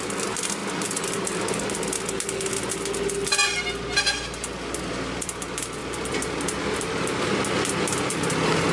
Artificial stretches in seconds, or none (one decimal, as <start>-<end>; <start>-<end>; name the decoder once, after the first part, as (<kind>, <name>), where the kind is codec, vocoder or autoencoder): none